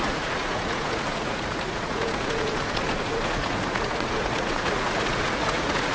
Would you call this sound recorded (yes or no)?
no